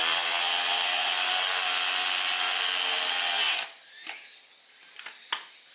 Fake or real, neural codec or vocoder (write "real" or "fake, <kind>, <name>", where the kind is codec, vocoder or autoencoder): real